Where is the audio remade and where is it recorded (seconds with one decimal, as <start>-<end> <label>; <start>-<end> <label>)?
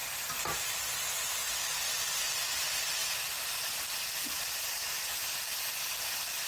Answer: 0.0-6.5 recorded